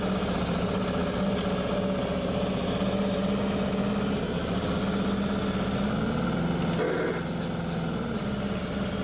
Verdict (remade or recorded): recorded